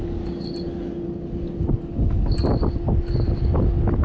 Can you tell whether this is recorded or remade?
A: recorded